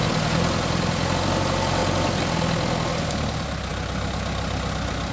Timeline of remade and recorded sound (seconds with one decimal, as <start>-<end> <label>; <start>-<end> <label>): 0.0-5.1 recorded